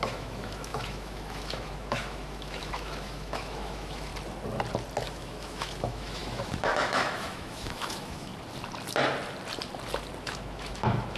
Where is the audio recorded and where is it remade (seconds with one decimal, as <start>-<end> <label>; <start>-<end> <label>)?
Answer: 0.0-4.1 remade; 4.1-5.0 recorded; 5.0-8.3 remade; 8.3-10.2 recorded; 10.2-11.2 remade